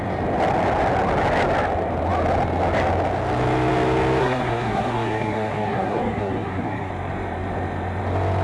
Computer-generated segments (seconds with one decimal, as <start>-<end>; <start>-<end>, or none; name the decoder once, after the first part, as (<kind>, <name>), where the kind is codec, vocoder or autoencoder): 4.2-6.9 (codec, SNAC)